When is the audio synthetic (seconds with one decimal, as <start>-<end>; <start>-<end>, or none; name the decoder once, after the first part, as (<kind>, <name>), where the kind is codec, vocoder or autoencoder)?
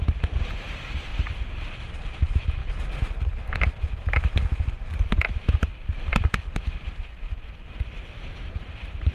0.0-1.1 (vocoder, BigVGAN v2); 1.8-2.6; 4.5-5.7; 8.3-9.1